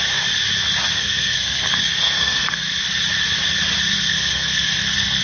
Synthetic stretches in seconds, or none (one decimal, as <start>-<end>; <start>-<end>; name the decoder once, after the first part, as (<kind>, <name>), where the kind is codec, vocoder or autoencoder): 0.9-2.7 (codec, SNAC); 3.9-5.2